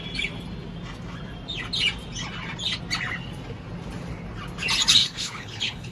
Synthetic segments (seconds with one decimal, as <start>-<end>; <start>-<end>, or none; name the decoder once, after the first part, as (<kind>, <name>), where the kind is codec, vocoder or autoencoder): 5.0-5.9 (codec, HILCodec)